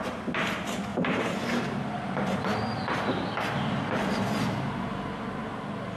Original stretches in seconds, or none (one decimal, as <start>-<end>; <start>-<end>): 0.0-0.9; 2.6-6.0